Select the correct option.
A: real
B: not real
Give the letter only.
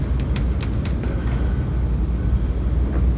A